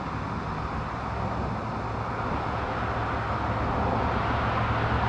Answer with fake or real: real